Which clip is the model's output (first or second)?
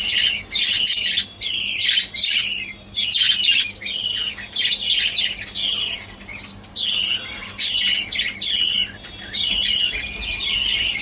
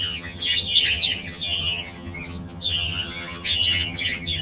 second